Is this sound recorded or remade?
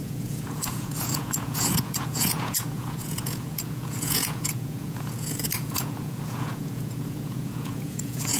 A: remade